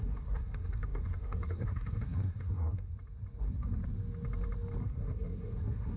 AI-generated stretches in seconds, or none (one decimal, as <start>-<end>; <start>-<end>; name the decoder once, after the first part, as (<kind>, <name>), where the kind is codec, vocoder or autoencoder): 0.0-2.9 (codec, SNAC); 3.4-3.8; 4.8-6.0

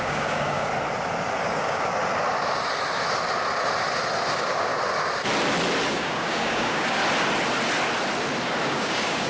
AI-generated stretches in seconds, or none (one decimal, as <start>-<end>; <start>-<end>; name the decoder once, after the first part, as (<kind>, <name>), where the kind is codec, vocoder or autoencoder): 0.0-0.7 (codec, DAC); 1.4-1.9; 4.3-4.7; 5.9-7.0; 8.6-9.3

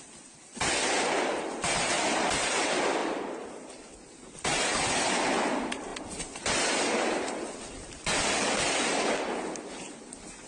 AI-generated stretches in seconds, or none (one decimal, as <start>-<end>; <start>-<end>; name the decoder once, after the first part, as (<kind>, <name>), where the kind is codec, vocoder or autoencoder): none

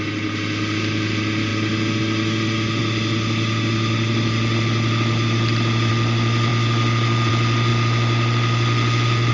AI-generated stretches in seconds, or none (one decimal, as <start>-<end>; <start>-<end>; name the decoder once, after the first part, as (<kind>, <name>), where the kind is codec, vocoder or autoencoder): none

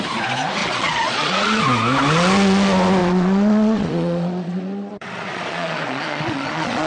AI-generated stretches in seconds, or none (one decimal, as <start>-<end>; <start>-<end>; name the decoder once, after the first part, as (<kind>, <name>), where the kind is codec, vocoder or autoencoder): 0.6-1.6 (vocoder, Vocos); 3.0-6.9

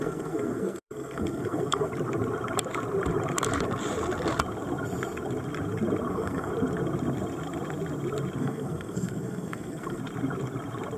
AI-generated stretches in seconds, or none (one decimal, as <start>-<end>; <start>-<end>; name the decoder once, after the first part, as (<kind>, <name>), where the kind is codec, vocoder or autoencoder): 0.0-1.9 (codec, SNAC); 6.1-6.5; 8.4-10.0